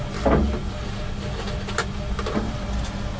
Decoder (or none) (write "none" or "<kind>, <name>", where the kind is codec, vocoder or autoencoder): none